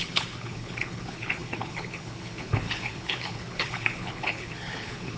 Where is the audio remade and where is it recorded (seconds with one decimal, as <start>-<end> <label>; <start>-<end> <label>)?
0.0-5.2 remade